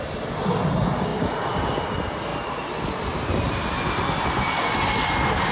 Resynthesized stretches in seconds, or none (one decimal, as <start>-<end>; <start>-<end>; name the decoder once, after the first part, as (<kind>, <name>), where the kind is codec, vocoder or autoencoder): none